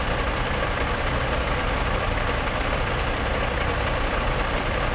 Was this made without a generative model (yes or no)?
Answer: no